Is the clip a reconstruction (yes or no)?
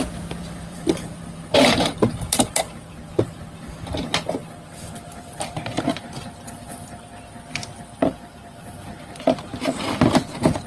yes